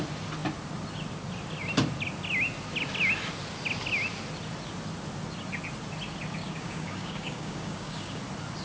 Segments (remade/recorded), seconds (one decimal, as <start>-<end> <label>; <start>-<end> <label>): 0.0-6.4 recorded; 6.4-8.2 remade; 8.2-8.6 recorded